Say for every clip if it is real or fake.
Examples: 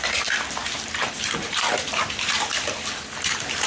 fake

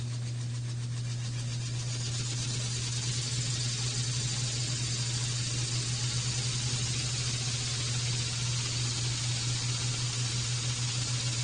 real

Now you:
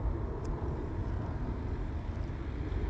real